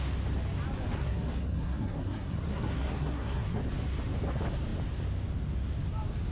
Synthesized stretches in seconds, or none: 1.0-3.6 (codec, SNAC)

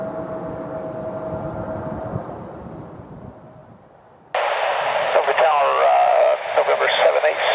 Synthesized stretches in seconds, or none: none

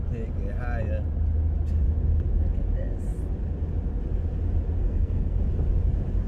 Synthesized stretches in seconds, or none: 4.8-5.4 (codec, SNAC)

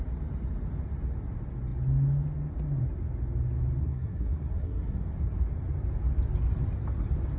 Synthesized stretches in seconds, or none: 3.8-5.0 (codec, SNAC)